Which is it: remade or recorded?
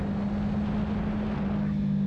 recorded